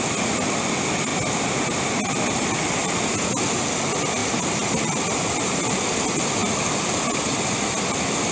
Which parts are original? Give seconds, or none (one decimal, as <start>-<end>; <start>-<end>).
0.0-8.3